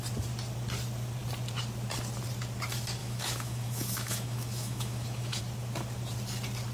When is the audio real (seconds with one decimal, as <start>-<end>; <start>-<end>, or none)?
0.0-3.0; 5.4-6.7